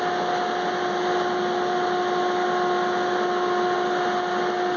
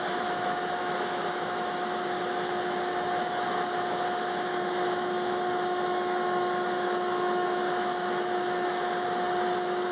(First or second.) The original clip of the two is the first